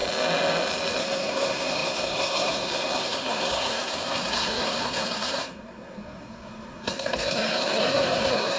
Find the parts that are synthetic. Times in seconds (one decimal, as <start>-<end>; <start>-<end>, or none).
1.0-8.6